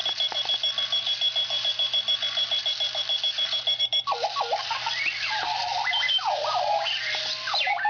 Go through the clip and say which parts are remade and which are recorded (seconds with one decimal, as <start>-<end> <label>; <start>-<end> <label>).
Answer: 0.0-3.8 recorded; 3.8-7.9 remade